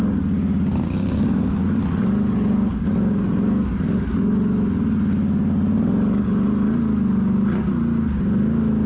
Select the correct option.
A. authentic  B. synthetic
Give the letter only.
A